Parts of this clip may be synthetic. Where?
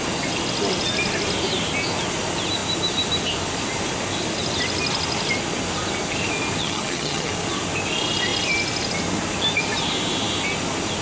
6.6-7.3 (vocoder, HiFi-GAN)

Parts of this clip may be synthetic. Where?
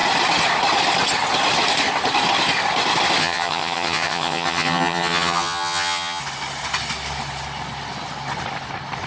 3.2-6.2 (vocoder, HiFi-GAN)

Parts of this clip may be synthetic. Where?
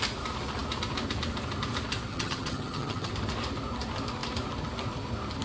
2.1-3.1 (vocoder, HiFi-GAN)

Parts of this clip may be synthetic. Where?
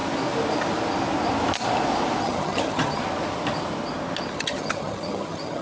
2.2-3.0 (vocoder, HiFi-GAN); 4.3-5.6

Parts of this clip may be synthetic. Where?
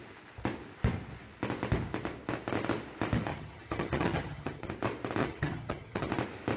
3.3-4.7 (vocoder, HiFi-GAN); 5.2-6.1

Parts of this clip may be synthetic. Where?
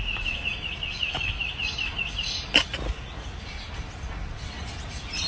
none